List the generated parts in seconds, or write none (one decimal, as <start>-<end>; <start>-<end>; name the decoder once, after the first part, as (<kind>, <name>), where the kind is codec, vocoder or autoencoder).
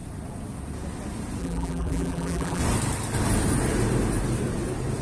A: 1.4-2.6 (vocoder, BigVGAN v2)